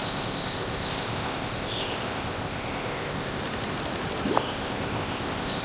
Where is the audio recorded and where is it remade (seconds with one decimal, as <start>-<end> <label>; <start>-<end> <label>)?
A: 0.0-3.4 remade; 3.4-4.4 recorded; 4.4-5.6 remade